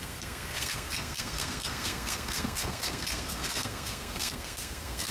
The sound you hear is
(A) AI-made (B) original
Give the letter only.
A